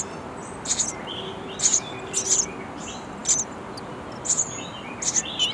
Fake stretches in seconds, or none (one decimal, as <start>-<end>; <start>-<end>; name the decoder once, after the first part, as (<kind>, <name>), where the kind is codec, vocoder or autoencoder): none